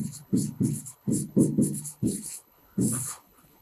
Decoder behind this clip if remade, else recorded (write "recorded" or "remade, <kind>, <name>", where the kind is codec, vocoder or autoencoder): remade, codec, HILCodec